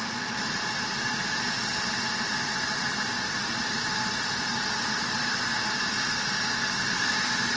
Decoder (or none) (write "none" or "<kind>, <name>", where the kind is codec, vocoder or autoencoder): none